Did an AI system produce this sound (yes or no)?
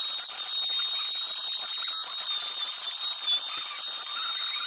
no